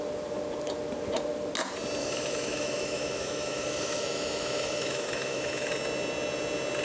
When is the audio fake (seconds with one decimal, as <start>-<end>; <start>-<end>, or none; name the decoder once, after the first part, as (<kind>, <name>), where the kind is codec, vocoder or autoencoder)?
2.0-5.7 (autoencoder, DAC-VAE)